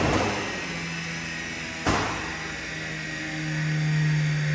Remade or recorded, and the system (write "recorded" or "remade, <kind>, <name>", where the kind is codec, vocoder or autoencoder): recorded